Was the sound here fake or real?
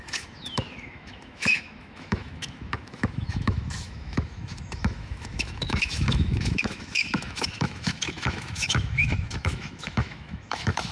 fake